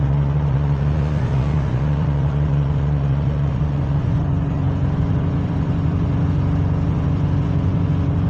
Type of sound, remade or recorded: remade